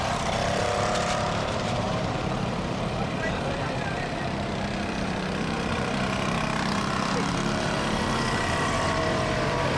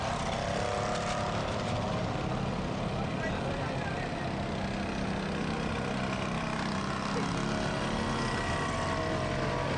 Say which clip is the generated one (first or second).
first